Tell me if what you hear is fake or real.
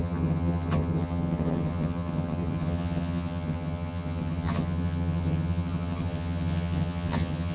fake